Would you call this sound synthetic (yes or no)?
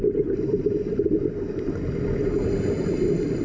no